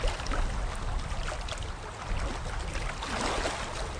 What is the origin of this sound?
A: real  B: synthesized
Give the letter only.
A